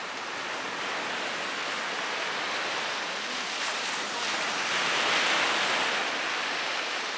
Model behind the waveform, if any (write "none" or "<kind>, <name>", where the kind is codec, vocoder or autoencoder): none